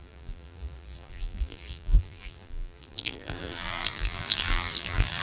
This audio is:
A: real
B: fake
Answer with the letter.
B